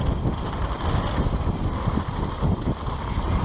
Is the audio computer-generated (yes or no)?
no